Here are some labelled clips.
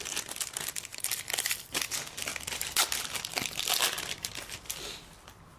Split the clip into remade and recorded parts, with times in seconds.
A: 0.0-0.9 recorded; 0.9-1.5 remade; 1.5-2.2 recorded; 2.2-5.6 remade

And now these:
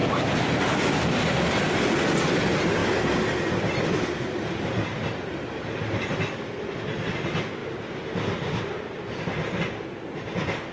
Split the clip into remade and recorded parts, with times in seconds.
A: 0.0-1.8 remade; 1.8-7.6 recorded; 7.6-9.6 remade; 9.6-10.7 recorded